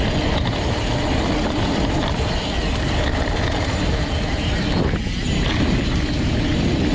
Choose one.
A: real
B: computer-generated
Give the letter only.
A